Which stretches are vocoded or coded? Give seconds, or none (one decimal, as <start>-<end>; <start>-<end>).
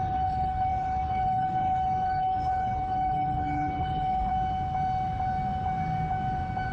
0.0-4.3